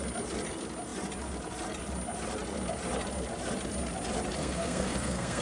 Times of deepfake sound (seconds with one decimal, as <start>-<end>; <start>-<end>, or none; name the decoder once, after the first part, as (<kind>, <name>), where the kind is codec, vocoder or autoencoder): 4.4-5.4 (codec, SNAC)